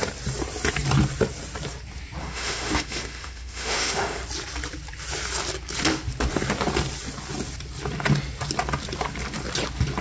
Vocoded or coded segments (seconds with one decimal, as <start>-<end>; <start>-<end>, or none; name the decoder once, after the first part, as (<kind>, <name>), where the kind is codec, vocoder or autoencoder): 2.2-4.2 (autoencoder, DAC-VAE)